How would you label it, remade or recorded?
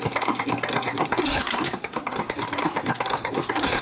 remade